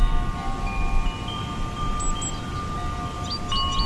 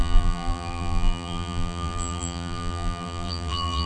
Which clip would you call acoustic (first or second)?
first